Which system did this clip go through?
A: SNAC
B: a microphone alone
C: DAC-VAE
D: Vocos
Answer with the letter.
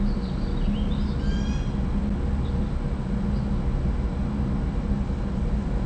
B